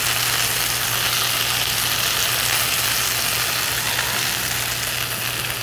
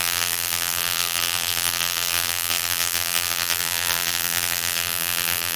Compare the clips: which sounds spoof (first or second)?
second